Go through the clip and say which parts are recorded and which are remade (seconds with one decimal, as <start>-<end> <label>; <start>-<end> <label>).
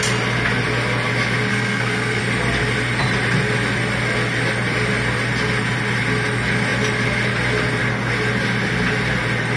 0.0-1.5 recorded; 1.5-2.2 remade; 2.2-9.6 recorded